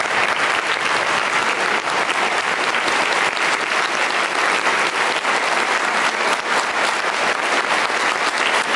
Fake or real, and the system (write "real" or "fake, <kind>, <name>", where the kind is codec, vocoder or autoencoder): real